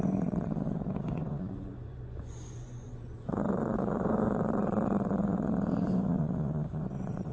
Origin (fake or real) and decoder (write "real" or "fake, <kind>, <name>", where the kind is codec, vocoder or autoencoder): fake, vocoder, Vocos